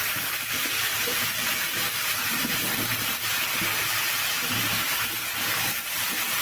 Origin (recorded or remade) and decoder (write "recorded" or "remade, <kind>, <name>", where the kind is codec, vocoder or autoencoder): remade, vocoder, BigVGAN v2